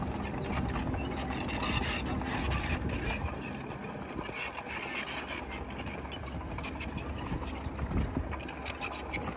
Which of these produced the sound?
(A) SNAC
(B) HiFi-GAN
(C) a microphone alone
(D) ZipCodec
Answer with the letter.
C